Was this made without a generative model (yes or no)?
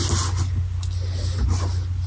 yes